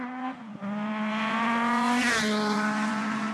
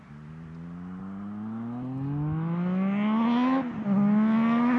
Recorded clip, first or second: second